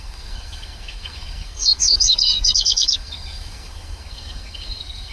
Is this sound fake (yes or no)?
yes